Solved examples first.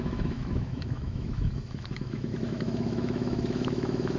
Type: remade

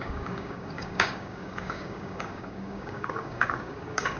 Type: remade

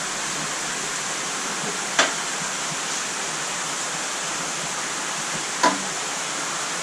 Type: recorded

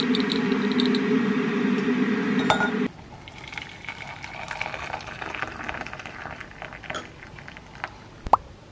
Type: recorded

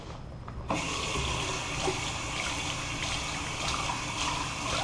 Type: recorded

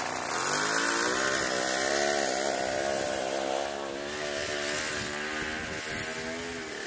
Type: recorded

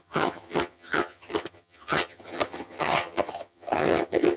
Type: remade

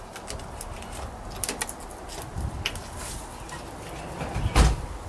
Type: recorded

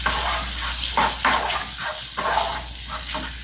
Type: recorded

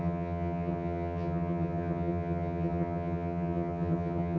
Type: remade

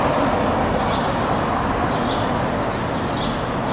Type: recorded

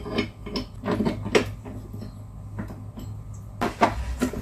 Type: recorded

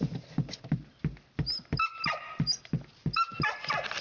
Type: recorded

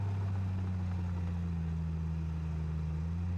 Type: recorded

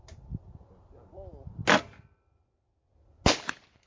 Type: recorded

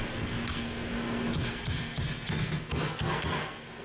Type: remade